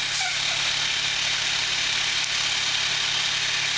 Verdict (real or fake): real